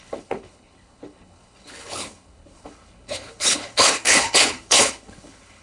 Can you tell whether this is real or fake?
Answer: fake